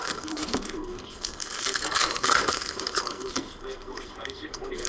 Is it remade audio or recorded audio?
remade